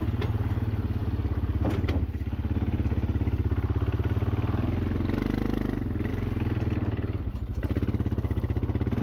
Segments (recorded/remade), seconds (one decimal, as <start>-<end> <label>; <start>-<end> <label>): 0.0-9.0 recorded